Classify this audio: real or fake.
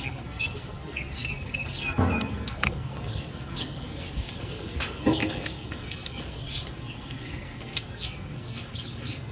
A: fake